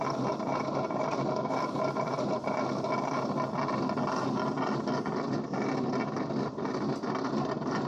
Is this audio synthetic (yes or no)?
no